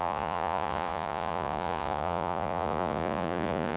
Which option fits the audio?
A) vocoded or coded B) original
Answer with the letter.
A